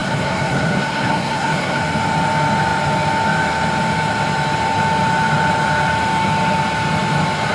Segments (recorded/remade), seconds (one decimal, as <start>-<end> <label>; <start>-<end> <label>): 0.0-1.8 remade; 1.8-7.5 recorded